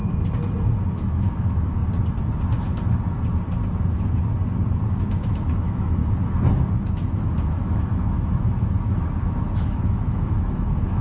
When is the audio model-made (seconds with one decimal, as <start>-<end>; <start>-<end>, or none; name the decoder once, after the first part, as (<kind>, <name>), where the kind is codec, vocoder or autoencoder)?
0.9-1.8 (autoencoder, DAC-VAE); 4.9-6.0; 6.9-11.0